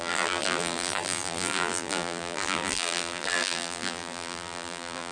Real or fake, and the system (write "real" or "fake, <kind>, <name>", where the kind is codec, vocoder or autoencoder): fake, vocoder, BigVGAN v2